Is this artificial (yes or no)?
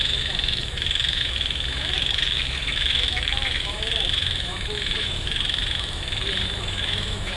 yes